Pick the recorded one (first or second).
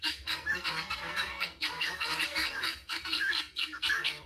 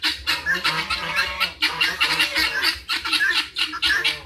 second